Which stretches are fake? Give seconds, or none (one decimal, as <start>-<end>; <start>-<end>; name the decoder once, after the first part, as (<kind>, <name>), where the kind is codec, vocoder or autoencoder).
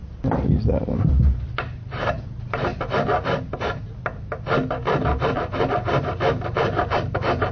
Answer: 0.7-2.7 (vocoder, BigVGAN v2); 5.3-7.5